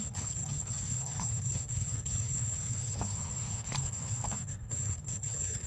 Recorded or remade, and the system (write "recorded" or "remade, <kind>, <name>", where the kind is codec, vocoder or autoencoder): remade, codec, HILCodec